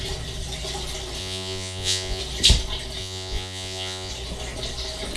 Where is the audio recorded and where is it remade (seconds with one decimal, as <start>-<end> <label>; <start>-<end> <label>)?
0.0-1.2 recorded; 1.2-2.2 remade; 2.2-3.0 recorded; 3.0-4.1 remade; 4.1-5.2 recorded